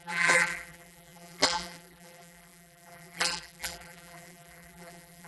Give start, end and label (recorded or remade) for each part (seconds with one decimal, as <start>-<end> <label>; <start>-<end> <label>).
0.0-5.3 remade